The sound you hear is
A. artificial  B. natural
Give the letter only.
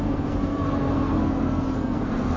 A